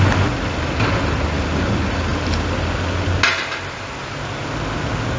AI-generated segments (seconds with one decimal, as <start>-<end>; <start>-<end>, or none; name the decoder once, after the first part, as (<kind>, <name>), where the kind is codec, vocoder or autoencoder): none